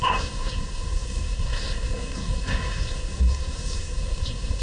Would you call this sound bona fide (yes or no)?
no